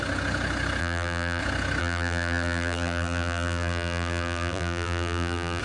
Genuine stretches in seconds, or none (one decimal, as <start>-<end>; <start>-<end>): 0.0-0.8; 1.4-1.8